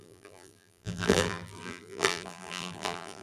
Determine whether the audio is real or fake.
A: fake